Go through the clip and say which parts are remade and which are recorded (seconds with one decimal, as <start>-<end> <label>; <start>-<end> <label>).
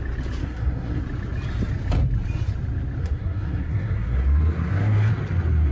0.0-0.4 recorded; 0.4-1.0 remade; 1.0-3.0 recorded; 3.0-5.1 remade; 5.1-5.7 recorded